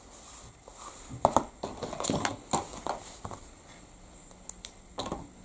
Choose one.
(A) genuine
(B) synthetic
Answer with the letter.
A